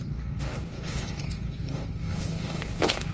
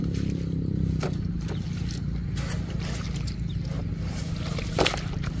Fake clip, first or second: first